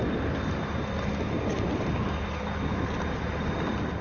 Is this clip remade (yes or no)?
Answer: no